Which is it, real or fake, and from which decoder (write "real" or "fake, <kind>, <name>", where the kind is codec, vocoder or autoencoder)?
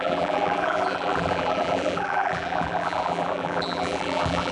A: fake, vocoder, BigVGAN v2